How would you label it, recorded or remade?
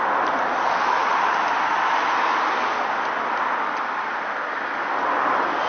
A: recorded